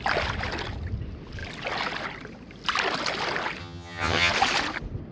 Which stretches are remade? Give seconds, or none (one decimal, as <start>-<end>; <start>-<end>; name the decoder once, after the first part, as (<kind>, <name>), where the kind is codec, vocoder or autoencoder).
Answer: 3.6-4.3 (vocoder, HiFi-GAN)